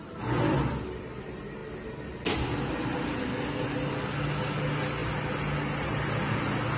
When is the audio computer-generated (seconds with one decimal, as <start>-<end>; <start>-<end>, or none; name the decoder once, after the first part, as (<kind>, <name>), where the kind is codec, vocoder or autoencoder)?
none